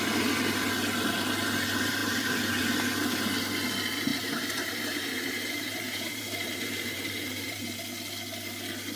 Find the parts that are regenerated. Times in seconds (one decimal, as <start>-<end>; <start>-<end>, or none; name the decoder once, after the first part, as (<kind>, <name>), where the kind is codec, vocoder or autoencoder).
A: 2.0-2.7 (vocoder, BigVGAN v2); 4.1-7.6